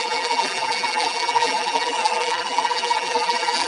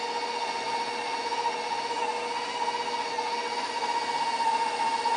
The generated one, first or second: first